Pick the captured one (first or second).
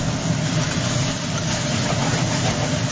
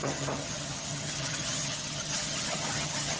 first